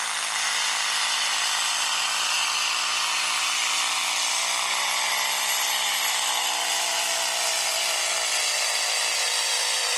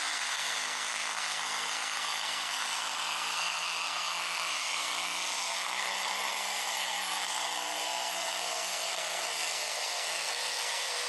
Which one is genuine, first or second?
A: first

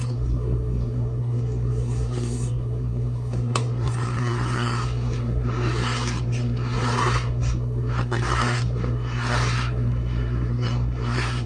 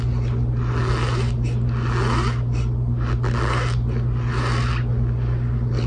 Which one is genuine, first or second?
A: second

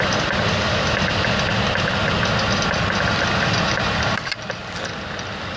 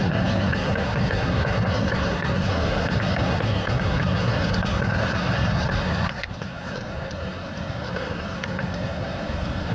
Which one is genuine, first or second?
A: first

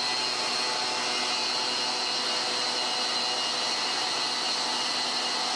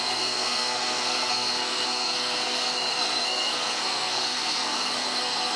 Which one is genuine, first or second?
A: first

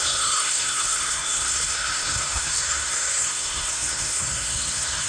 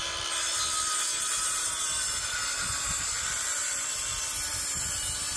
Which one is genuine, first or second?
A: second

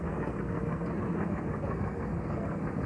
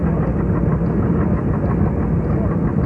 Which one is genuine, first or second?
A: second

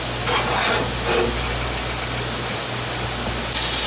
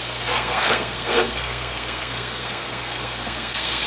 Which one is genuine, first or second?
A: first